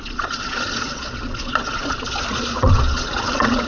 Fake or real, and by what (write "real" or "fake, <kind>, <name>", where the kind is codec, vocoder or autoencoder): fake, vocoder, Vocos